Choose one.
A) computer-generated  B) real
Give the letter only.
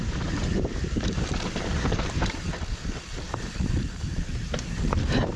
A